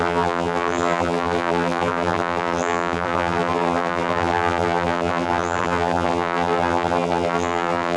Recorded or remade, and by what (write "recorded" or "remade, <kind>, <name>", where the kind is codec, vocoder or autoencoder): remade, vocoder, BigVGAN v2